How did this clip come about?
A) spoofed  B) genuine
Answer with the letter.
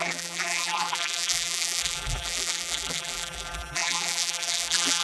A